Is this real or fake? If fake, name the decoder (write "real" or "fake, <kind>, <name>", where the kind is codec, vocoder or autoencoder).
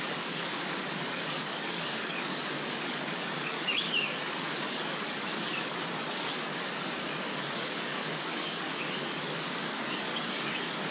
fake, codec, DAC